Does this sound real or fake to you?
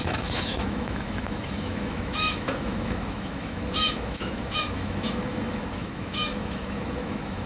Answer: fake